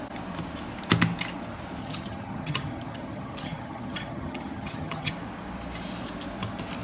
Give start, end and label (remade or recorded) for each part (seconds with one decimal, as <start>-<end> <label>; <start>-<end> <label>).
0.0-1.8 recorded; 1.8-5.1 remade; 5.1-6.8 recorded